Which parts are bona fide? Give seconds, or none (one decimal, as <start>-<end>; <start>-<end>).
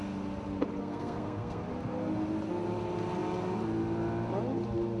0.0-0.8; 1.6-5.0